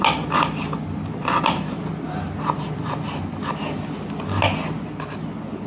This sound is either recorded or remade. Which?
recorded